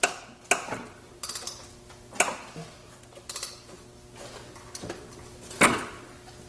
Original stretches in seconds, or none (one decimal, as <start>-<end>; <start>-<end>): 0.0-6.5